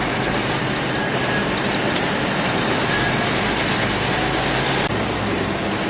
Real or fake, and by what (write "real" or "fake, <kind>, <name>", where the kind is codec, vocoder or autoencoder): real